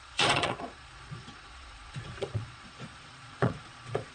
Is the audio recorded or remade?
remade